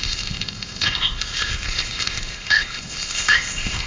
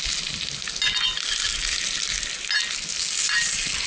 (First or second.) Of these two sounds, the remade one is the first